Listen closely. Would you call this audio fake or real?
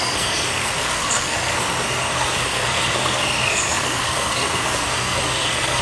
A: fake